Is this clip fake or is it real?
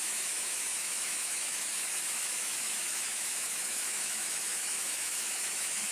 fake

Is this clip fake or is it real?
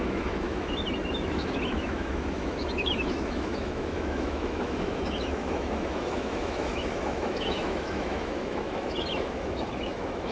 fake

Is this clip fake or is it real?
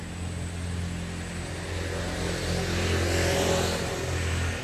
real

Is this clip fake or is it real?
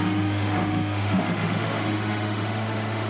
fake